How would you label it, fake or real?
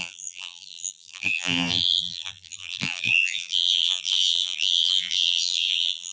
fake